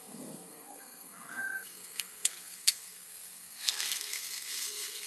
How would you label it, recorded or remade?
remade